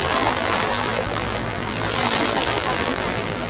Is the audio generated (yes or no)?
yes